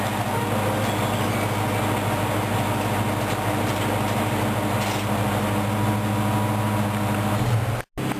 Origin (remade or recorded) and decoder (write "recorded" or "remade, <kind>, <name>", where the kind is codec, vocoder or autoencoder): recorded